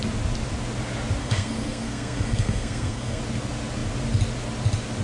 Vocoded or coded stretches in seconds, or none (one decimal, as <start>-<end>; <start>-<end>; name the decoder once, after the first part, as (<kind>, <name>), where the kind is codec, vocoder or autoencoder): 1.2-3.2 (codec, SNAC)